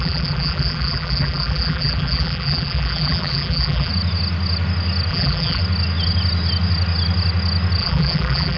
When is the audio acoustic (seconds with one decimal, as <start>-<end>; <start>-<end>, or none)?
3.9-5.1; 5.6-7.8